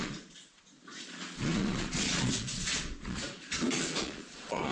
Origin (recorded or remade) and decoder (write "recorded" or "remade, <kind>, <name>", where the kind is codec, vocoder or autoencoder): remade, vocoder, Vocos